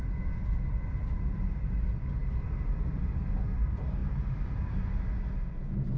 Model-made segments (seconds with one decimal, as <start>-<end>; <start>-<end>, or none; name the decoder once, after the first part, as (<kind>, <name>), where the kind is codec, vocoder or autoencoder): none

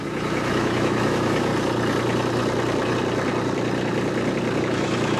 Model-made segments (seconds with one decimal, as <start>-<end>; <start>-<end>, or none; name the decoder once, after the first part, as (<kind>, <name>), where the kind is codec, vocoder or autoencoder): 0.0-1.5 (autoencoder, DAC-VAE); 4.6-5.2

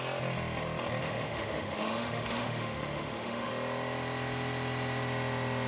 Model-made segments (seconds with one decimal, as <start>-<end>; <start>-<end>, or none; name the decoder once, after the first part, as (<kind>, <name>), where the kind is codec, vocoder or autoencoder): 1.0-3.5 (autoencoder, DAC-VAE)

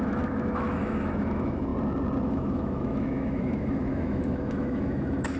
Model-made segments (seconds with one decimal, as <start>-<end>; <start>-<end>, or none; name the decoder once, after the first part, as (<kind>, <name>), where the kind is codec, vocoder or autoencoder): 0.0-1.7 (autoencoder, DAC-VAE); 2.3-5.4

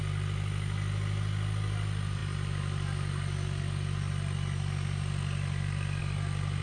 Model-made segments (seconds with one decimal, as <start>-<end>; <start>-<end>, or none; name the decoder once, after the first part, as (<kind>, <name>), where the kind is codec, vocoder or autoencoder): none

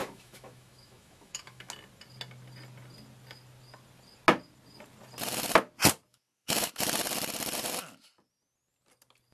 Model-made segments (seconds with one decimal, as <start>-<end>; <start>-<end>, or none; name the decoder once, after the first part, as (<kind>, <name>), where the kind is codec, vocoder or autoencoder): 0.0-1.7 (autoencoder, DAC-VAE); 6.1-6.7